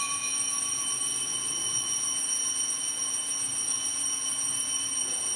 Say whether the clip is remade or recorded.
remade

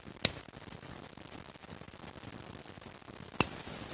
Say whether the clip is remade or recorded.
recorded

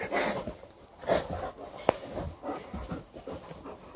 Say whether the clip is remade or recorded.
recorded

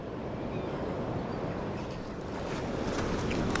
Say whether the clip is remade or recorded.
recorded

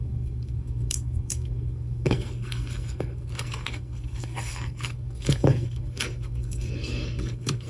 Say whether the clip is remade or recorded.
remade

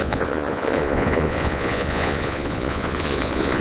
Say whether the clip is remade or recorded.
remade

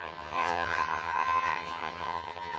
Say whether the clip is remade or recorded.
remade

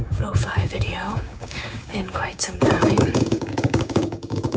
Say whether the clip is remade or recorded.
remade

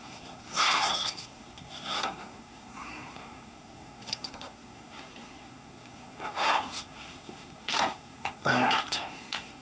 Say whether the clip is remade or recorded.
remade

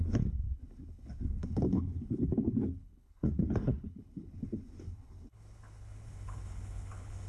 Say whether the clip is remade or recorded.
remade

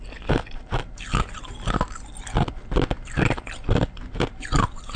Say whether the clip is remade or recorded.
recorded